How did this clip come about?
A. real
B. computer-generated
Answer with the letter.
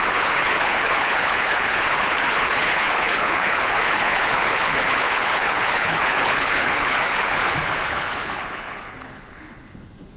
B